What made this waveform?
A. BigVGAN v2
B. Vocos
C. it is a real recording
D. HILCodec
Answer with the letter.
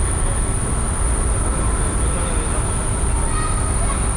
C